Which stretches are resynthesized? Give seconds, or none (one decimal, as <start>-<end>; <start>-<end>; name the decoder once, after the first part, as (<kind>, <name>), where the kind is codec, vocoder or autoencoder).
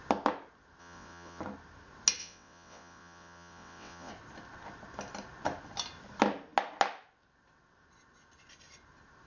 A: 0.8-1.4 (vocoder, WaveNeXt); 2.2-4.1